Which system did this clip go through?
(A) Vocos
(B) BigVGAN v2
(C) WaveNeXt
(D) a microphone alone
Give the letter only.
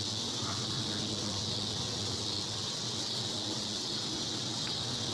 C